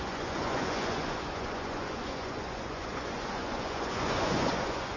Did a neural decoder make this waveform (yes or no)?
yes